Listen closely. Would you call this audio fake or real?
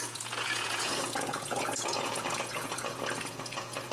fake